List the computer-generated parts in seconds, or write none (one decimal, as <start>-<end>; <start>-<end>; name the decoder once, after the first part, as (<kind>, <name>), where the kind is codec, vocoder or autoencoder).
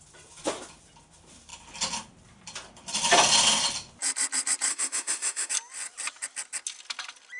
4.7-5.5 (autoencoder, DAC-VAE)